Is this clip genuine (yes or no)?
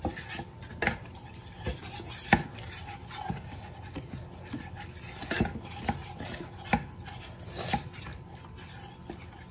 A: yes